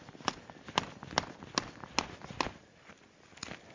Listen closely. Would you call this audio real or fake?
real